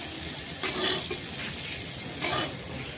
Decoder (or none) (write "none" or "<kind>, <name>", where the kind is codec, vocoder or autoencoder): none